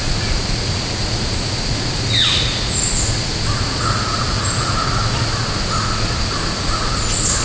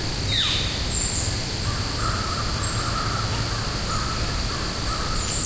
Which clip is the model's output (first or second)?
first